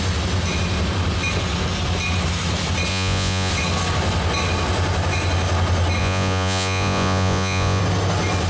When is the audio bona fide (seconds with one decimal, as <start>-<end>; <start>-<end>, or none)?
0.0-2.9; 3.5-6.0; 7.8-8.5